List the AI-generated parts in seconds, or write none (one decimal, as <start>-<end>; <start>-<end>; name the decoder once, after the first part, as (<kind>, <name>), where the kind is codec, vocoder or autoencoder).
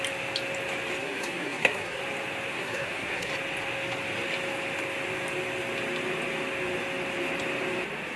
1.0-2.0 (codec, SNAC); 2.5-3.3